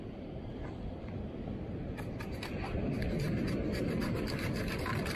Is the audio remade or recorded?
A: recorded